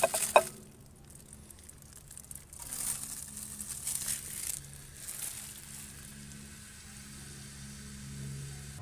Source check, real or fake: real